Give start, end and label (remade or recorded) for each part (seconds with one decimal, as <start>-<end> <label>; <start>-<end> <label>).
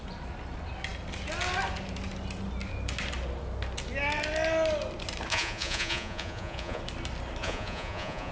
0.0-5.3 recorded; 5.3-6.8 remade; 6.8-7.4 recorded; 7.4-8.3 remade